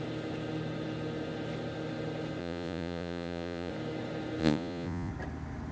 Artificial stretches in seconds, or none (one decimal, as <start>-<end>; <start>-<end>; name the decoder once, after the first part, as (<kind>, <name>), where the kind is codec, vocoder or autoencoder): 2.4-3.7 (vocoder, Vocos); 4.4-5.1

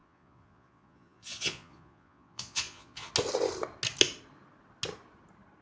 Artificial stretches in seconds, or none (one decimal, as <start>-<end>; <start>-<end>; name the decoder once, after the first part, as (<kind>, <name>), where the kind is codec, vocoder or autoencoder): 0.0-3.1 (vocoder, Vocos)

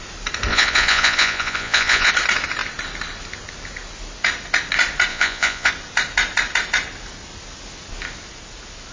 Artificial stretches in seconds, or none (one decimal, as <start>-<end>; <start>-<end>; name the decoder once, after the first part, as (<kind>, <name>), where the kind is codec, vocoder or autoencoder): 0.5-2.1 (vocoder, Vocos); 5.1-5.7

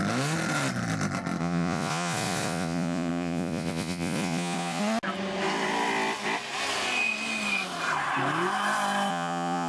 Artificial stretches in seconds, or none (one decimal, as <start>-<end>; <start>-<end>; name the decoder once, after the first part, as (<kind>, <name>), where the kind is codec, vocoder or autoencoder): 1.4-4.8 (vocoder, Vocos); 9.1-9.7